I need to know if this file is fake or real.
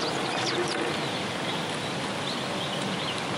real